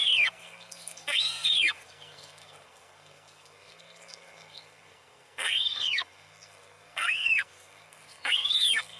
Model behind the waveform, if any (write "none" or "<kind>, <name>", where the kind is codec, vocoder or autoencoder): codec, SNAC